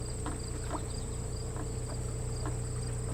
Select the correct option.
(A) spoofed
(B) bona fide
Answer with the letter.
B